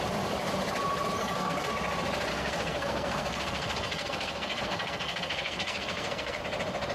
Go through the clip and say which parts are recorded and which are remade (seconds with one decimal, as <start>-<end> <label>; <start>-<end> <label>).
0.0-1.2 recorded; 1.2-1.7 remade; 1.7-2.3 recorded; 2.3-6.4 remade; 6.4-6.9 recorded